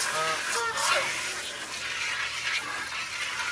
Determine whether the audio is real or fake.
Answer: real